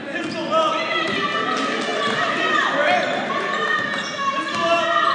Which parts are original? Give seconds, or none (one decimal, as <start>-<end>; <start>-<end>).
0.0-5.1